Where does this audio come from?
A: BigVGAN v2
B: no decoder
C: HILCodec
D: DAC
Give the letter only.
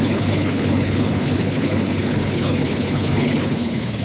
C